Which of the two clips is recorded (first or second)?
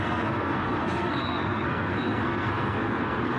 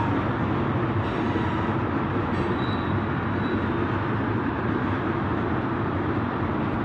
second